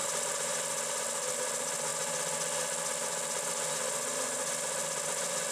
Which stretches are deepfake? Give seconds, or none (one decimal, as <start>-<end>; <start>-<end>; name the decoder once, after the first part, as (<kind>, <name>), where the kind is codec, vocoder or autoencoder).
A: 0.0-0.6 (vocoder, BigVGAN v2)